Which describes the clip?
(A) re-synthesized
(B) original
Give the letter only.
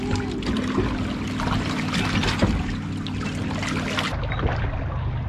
B